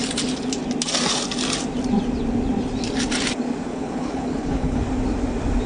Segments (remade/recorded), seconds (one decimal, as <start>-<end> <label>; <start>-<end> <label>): 0.0-3.7 recorded; 3.7-4.8 remade; 4.8-5.7 recorded